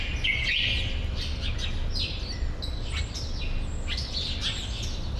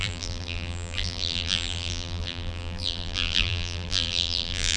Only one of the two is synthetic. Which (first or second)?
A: second